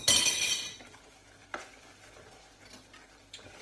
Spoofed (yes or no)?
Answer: no